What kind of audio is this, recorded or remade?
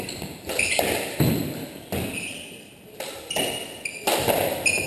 recorded